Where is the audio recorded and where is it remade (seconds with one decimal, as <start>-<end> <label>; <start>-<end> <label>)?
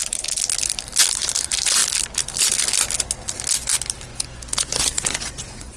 0.0-4.1 recorded; 4.1-5.8 remade